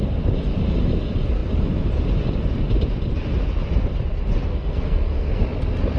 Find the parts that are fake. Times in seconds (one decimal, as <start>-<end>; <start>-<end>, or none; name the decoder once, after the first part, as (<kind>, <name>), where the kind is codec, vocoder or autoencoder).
4.5-5.4 (codec, SNAC)